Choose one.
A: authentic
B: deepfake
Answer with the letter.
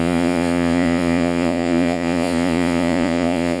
B